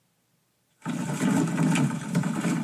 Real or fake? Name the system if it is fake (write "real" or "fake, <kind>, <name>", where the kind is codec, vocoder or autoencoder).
fake, vocoder, BigVGAN v2